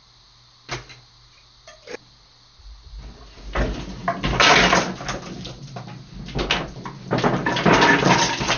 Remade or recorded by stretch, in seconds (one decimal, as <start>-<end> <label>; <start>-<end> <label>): 0.0-8.6 recorded